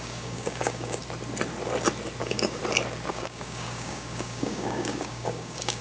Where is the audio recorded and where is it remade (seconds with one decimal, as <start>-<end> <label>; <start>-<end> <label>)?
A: 0.0-1.0 remade; 1.0-2.2 recorded; 2.2-2.6 remade; 2.6-3.1 recorded; 3.1-5.8 remade

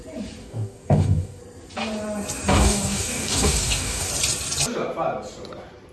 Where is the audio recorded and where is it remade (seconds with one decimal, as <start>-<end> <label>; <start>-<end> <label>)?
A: 0.0-0.4 recorded; 0.4-1.4 remade; 1.4-2.5 recorded; 2.5-4.1 remade; 4.1-5.9 recorded